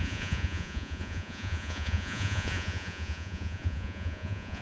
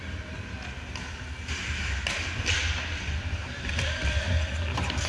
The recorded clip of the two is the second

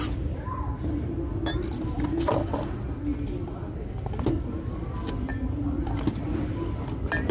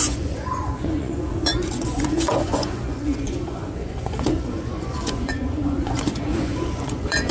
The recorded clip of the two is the first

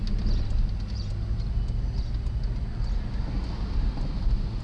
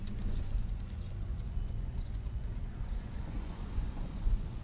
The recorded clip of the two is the first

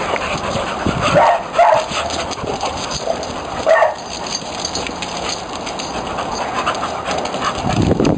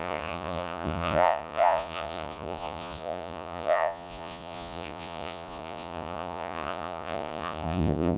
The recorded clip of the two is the first